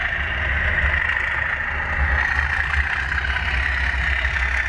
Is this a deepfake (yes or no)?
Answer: no